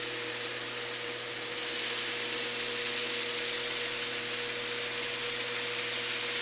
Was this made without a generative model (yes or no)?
yes